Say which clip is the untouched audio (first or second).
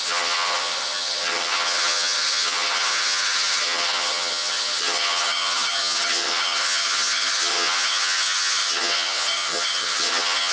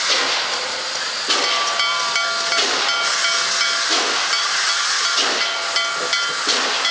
second